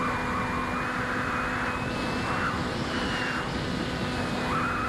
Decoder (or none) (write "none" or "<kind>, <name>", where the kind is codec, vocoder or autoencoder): none